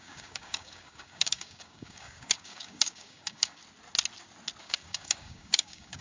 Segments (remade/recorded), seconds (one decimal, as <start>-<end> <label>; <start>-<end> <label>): 0.0-3.6 remade; 3.6-4.6 recorded; 4.6-6.0 remade

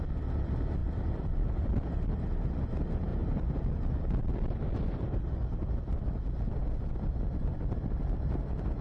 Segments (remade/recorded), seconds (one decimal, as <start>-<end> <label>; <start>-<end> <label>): 0.0-0.8 recorded; 0.8-2.2 remade; 2.2-3.1 recorded; 3.1-5.7 remade; 5.7-8.8 recorded

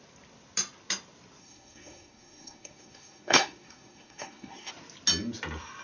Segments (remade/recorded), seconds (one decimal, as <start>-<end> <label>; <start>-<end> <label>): 0.0-1.4 recorded; 1.4-4.7 remade; 4.7-5.8 recorded

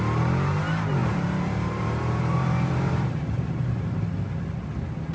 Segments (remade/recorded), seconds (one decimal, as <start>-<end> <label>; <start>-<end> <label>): 0.0-1.0 recorded; 1.0-4.1 remade; 4.1-5.1 recorded

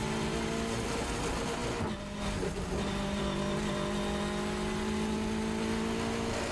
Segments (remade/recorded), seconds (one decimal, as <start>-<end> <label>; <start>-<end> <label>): 0.0-6.5 recorded